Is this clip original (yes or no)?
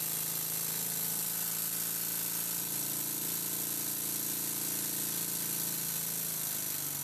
yes